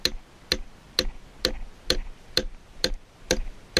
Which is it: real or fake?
real